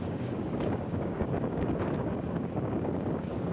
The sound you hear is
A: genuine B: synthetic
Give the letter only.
B